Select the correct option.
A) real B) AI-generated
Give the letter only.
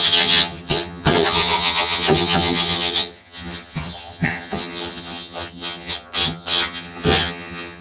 B